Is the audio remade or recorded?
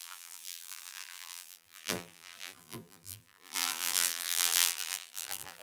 remade